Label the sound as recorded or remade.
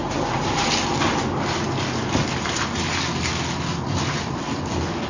recorded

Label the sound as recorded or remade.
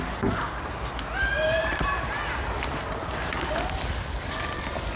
recorded